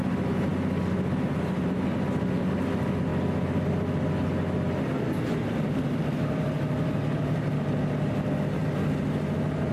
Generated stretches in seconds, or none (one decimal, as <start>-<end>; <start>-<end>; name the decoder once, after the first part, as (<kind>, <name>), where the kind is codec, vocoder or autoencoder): none